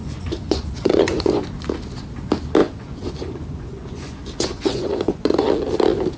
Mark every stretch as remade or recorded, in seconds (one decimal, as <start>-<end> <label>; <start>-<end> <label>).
0.0-1.4 remade; 1.4-2.6 recorded; 2.6-5.5 remade; 5.5-6.2 recorded